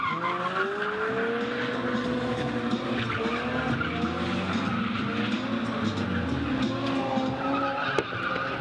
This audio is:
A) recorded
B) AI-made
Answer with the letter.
A